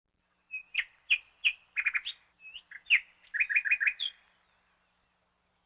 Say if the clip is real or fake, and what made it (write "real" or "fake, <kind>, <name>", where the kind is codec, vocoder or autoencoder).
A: real